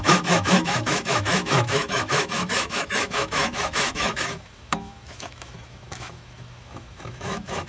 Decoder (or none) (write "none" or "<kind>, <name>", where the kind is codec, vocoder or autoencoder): autoencoder, DAC-VAE